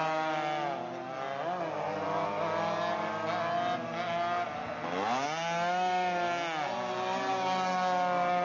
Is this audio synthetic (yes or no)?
no